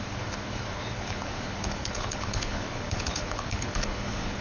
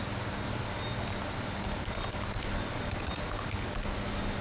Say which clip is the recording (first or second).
second